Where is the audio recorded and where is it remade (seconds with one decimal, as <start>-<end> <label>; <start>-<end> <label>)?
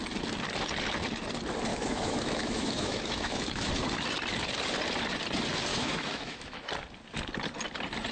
0.0-1.7 recorded; 1.7-3.7 remade; 3.7-5.7 recorded; 5.7-6.7 remade; 6.7-8.1 recorded